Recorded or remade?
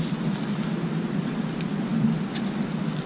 recorded